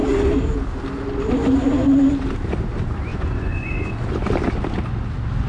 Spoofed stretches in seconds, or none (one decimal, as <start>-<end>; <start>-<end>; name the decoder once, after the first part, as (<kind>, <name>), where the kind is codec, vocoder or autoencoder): 3.1-3.9 (vocoder, Vocos)